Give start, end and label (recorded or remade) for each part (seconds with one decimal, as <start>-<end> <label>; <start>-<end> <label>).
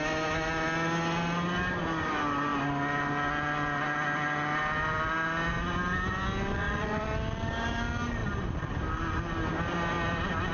0.0-6.5 recorded; 6.5-7.0 remade; 7.0-10.5 recorded